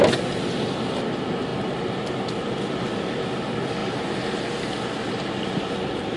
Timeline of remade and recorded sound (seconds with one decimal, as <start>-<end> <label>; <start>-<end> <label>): 0.0-6.2 recorded